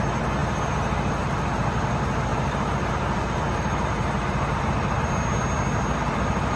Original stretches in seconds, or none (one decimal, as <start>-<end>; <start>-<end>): 0.0-2.3; 5.0-6.6